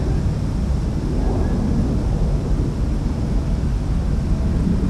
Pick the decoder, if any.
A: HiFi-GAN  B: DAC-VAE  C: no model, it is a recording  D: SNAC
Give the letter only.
C